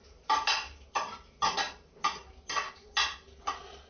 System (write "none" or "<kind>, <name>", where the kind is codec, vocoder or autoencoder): none